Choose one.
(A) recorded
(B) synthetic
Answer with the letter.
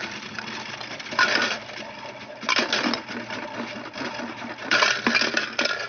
A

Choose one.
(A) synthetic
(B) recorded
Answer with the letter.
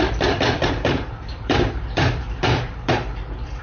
A